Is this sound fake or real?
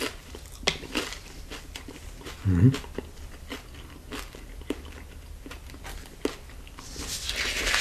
real